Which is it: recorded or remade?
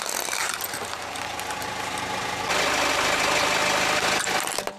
recorded